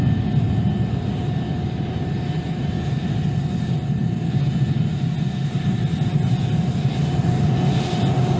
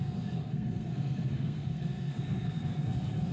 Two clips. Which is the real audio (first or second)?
first